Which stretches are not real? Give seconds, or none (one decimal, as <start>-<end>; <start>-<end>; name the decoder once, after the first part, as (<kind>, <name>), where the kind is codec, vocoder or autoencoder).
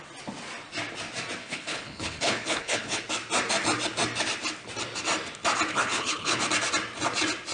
1.4-3.0 (codec, HILCodec); 5.7-6.4